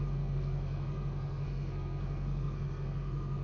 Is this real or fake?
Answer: fake